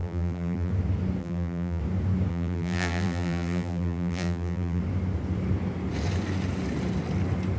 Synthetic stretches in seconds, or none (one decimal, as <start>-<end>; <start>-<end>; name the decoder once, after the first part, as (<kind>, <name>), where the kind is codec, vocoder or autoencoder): 0.0-0.7 (vocoder, BigVGAN v2); 1.2-1.8; 2.3-4.8